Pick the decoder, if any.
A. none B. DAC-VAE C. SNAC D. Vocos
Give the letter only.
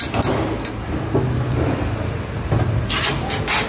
A